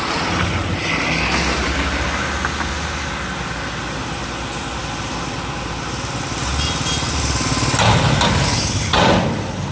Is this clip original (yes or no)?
yes